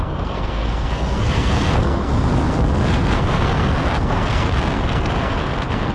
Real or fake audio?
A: fake